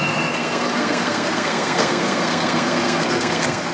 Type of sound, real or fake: fake